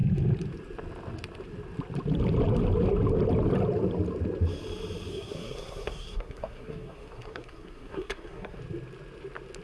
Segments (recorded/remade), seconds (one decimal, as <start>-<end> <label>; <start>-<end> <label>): 0.0-5.1 recorded; 5.1-8.6 remade; 8.6-9.6 recorded